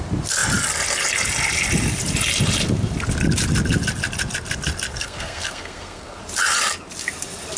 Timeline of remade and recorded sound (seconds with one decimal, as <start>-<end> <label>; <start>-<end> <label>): 0.0-4.9 recorded; 4.9-6.2 remade; 6.2-7.6 recorded